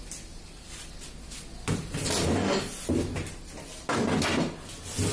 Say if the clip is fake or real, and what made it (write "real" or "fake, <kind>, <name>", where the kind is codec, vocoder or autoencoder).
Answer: real